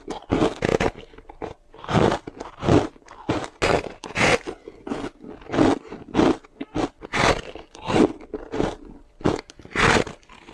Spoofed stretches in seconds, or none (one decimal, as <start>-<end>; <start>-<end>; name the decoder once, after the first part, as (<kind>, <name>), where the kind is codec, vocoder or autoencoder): none